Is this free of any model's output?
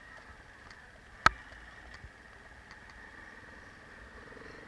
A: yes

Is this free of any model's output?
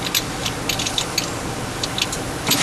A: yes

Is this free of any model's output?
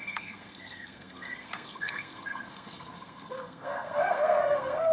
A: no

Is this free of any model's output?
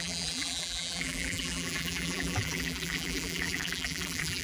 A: no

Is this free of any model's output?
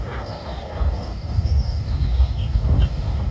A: no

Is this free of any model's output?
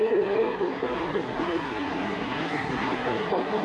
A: no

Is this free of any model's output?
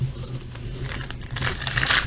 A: yes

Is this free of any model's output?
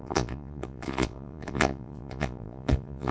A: no